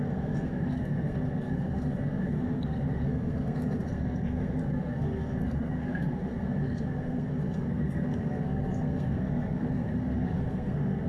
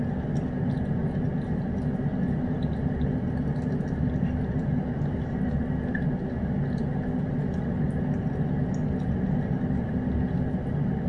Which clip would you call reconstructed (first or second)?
first